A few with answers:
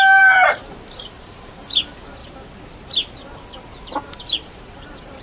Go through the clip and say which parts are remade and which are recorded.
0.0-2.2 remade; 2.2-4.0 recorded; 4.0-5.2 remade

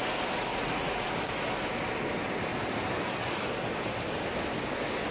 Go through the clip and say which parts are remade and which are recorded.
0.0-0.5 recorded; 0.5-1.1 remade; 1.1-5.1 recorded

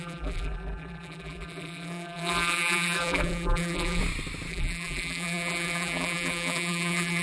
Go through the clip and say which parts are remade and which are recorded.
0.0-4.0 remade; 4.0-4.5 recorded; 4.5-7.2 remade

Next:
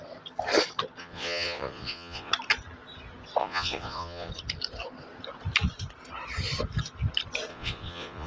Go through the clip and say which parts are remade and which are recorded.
0.0-1.0 recorded; 1.0-2.3 remade; 2.3-3.4 recorded; 3.4-4.3 remade; 4.3-7.5 recorded; 7.5-8.3 remade